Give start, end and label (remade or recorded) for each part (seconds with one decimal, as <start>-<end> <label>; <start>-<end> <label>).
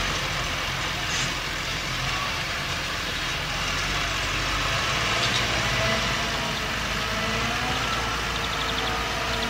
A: 0.0-1.7 recorded; 1.7-6.2 remade; 6.2-9.5 recorded